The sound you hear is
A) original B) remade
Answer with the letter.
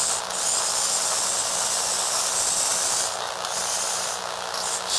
A